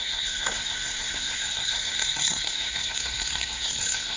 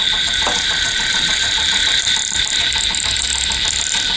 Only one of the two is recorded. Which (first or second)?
second